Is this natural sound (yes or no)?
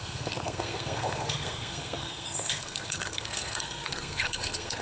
no